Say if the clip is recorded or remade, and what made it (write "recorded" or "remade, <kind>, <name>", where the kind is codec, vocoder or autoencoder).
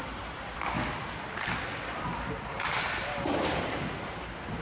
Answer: remade, vocoder, BigVGAN v2